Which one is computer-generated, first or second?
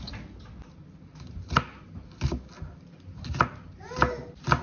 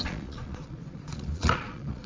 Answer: second